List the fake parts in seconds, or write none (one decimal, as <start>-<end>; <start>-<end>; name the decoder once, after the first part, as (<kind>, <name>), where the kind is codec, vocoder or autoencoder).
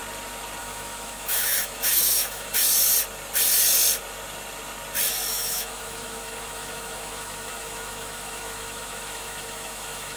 0.6-2.6 (autoencoder, DAC-VAE); 5.3-10.2